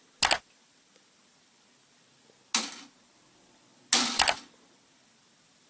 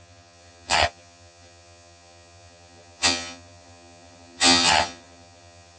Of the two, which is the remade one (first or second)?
second